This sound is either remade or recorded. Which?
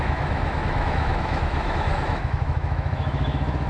remade